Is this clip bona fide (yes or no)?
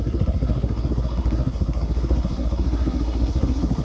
no